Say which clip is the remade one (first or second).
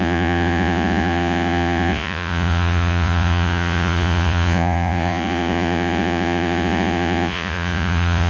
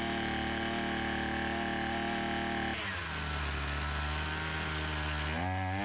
first